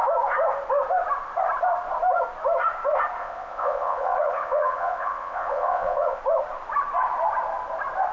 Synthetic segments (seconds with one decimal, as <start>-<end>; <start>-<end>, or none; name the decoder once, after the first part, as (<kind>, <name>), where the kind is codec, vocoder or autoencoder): 3.2-6.2 (vocoder, Vocos)